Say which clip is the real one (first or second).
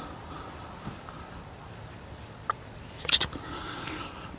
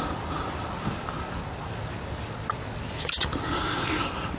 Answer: second